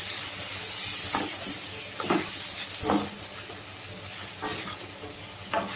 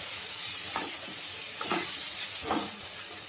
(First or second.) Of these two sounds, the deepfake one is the second